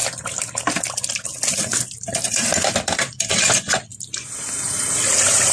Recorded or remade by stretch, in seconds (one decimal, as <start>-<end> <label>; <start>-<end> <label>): 0.0-5.5 recorded